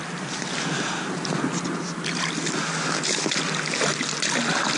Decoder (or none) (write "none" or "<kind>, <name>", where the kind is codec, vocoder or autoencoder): none